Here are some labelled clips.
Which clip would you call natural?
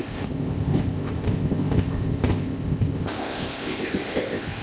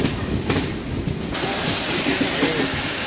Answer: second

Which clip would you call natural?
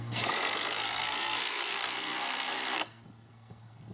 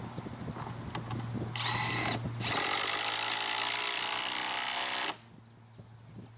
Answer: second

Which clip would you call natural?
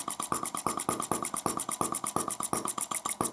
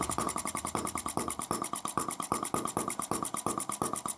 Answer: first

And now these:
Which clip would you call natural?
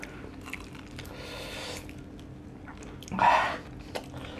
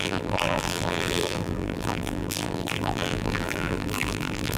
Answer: first